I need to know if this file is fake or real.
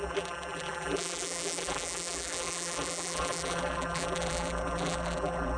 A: fake